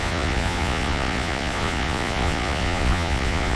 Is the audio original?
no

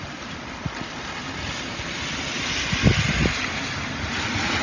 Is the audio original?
yes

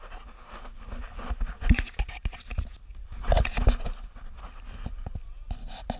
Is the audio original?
yes